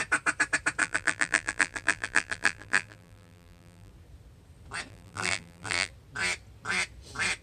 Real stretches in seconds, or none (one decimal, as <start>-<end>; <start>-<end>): 0.0-0.8; 3.9-4.9; 5.9-7.4